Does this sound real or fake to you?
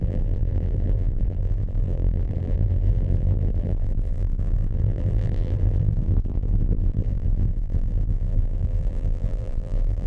fake